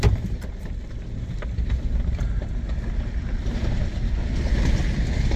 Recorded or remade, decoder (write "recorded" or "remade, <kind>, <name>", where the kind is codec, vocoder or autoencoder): remade, vocoder, BigVGAN v2